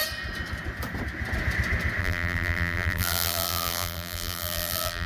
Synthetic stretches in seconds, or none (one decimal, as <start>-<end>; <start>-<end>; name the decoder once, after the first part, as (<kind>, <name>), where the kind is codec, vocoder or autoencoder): 2.0-5.1 (vocoder, BigVGAN v2)